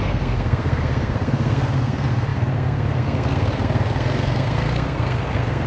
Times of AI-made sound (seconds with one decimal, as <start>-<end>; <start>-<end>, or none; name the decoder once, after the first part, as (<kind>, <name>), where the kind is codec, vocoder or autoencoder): 0.0-5.7 (codec, SNAC)